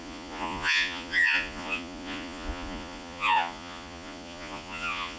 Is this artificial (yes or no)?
yes